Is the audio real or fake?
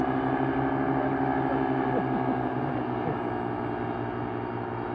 real